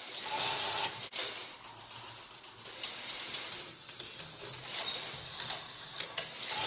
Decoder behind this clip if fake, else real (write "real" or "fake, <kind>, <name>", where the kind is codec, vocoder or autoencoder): real